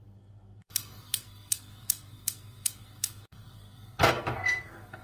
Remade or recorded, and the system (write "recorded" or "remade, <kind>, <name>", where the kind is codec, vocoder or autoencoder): remade, codec, SNAC